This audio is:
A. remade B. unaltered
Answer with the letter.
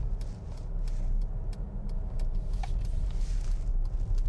B